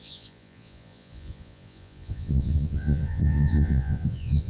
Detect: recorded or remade remade